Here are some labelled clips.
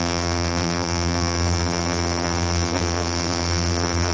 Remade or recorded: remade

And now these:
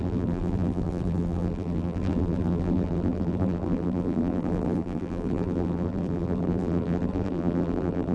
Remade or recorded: remade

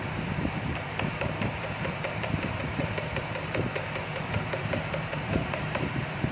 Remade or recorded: remade